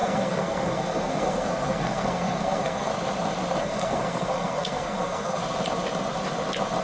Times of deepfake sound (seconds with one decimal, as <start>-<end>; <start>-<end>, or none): 0.0-2.9; 3.6-5.4